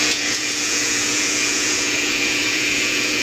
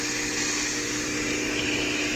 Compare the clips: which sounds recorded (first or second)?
second